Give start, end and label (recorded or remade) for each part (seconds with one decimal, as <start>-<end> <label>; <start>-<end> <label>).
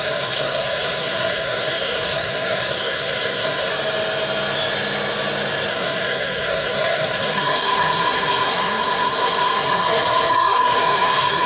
0.0-3.7 remade; 3.7-5.7 recorded; 5.7-11.5 remade